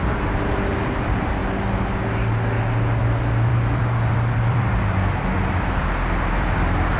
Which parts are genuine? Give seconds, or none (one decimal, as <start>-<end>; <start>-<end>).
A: 0.0-3.5